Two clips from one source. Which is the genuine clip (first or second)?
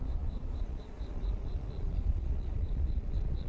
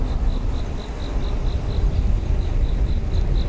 second